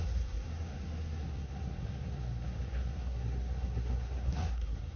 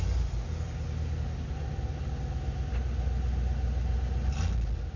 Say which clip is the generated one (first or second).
first